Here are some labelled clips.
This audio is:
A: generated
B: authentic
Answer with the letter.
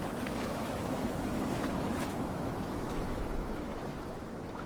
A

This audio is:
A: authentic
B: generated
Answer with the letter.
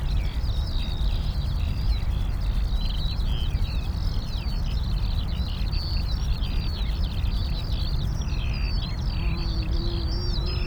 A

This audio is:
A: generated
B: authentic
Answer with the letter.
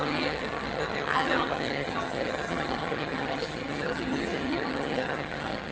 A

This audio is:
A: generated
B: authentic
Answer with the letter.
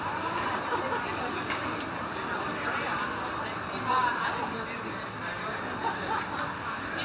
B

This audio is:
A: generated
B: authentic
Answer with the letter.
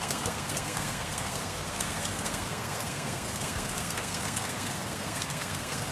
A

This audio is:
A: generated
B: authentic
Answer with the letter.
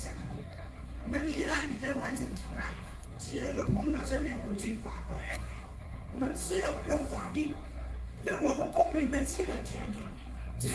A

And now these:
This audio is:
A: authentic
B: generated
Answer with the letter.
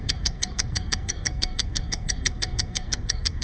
B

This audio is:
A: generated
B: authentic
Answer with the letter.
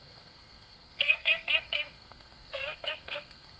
A